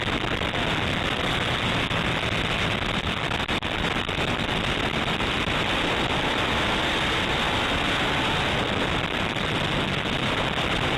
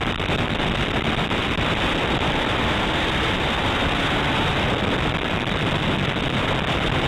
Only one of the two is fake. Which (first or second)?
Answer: second